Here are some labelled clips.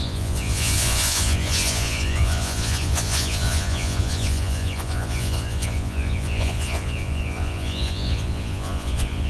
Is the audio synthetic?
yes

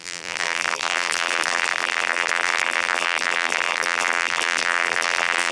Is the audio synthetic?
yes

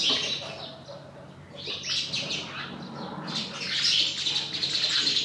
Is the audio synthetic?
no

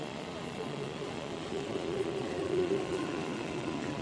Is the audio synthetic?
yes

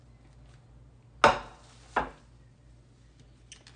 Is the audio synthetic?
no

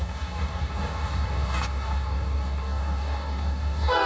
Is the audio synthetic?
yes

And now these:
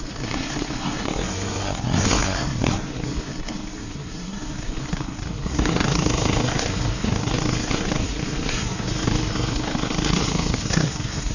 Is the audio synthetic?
yes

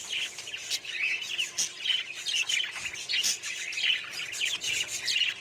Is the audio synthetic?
no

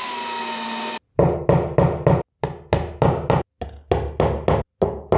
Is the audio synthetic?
no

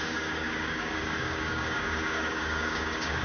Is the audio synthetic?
yes